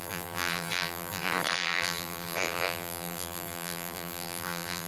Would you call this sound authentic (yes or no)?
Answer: no